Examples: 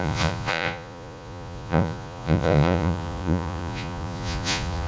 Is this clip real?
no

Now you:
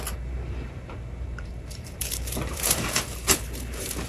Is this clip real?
no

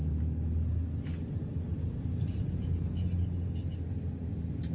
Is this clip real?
yes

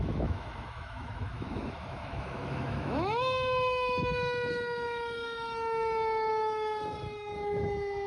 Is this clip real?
no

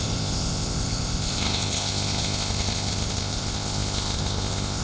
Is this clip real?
no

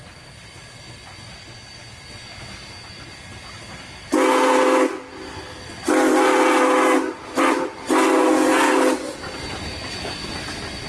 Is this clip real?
yes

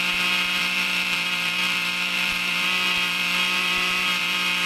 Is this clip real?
no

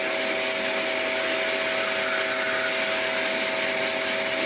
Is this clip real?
yes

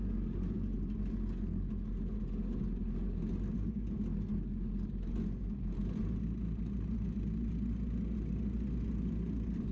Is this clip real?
yes